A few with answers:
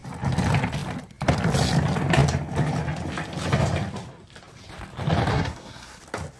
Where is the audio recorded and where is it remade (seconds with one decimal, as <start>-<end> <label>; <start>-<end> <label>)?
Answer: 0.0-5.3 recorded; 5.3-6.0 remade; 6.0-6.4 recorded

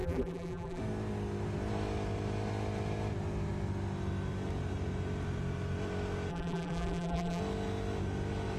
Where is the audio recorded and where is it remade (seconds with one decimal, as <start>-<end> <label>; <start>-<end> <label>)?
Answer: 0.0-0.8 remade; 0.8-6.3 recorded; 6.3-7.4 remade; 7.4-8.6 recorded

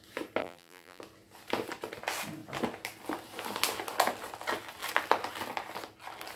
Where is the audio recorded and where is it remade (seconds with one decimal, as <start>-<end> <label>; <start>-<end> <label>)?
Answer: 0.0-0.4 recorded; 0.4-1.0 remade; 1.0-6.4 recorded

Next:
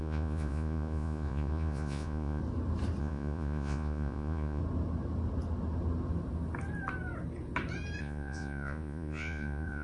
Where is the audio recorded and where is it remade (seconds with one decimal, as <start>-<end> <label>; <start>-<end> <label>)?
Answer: 0.0-2.4 remade; 2.4-3.0 recorded; 3.0-4.6 remade; 4.6-8.0 recorded; 8.0-9.8 remade